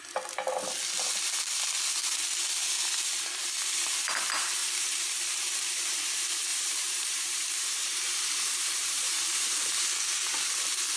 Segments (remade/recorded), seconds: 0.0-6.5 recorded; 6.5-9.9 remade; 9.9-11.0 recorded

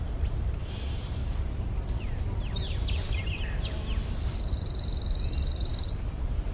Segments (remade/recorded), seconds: 0.0-1.2 remade; 1.2-1.9 recorded; 1.9-3.9 remade; 3.9-5.7 recorded; 5.7-6.5 remade